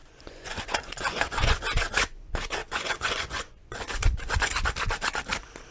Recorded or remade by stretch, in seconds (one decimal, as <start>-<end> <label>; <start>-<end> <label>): 0.0-2.2 remade; 2.2-2.6 recorded; 2.6-4.5 remade; 4.5-5.7 recorded